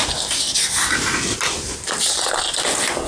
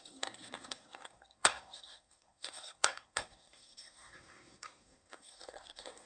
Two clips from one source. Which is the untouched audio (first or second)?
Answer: first